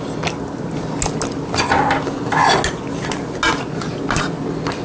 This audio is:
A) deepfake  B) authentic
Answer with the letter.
B